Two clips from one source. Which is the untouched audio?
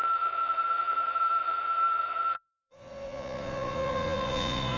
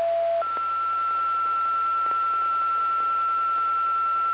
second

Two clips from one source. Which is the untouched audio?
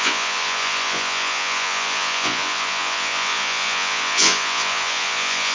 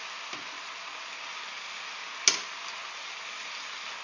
second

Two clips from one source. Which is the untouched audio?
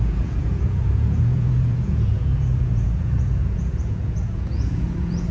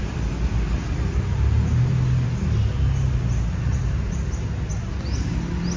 second